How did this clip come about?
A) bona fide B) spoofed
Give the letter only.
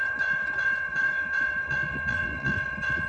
B